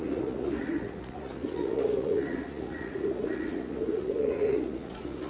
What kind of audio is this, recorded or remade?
remade